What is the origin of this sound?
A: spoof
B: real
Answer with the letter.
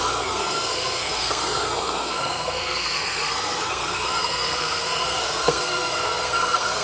A